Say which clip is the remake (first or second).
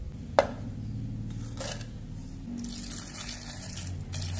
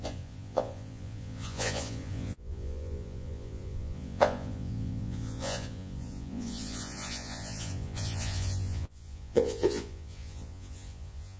second